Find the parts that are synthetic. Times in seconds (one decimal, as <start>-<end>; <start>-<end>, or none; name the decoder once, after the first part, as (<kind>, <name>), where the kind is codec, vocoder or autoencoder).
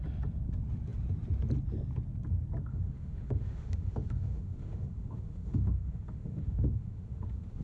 2.7-7.6 (autoencoder, DAC-VAE)